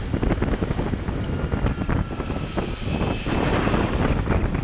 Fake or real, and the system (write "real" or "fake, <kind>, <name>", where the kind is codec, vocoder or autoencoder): real